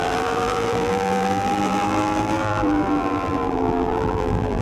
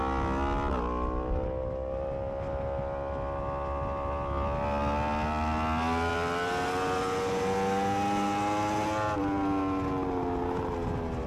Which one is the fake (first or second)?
first